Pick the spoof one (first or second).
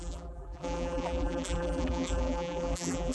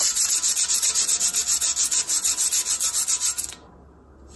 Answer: first